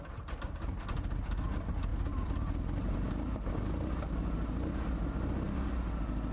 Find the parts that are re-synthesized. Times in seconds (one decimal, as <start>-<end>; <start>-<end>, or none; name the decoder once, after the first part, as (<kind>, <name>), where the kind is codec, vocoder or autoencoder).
none